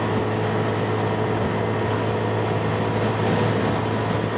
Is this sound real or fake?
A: real